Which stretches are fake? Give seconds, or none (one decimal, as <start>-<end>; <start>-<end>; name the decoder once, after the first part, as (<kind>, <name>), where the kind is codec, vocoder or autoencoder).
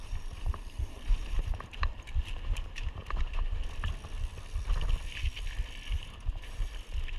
0.0-3.0 (vocoder, BigVGAN v2); 5.9-7.2